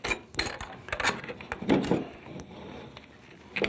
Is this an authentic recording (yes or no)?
yes